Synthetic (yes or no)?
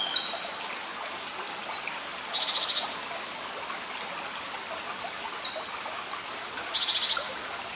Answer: no